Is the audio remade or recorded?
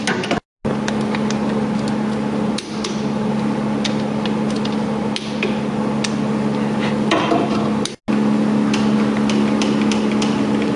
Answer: recorded